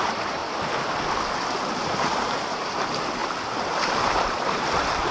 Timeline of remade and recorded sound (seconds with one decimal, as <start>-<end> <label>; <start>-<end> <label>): 0.0-0.4 remade; 0.4-1.8 recorded; 1.8-3.2 remade; 3.2-4.1 recorded; 4.1-5.1 remade